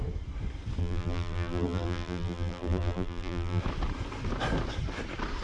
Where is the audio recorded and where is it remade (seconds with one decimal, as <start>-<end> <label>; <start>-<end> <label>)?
0.0-0.8 recorded; 0.8-3.6 remade; 3.6-5.4 recorded